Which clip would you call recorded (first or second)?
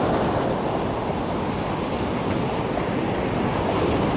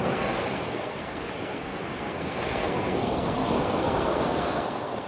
first